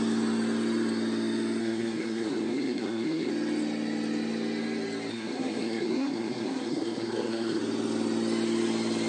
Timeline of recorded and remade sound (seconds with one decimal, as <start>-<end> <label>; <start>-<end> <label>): 0.0-1.6 recorded; 1.6-3.3 remade; 3.3-5.1 recorded; 5.1-7.6 remade; 7.6-9.1 recorded